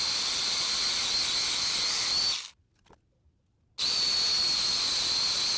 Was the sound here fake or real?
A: real